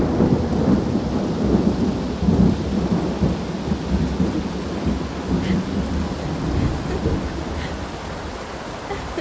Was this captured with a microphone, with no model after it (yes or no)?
yes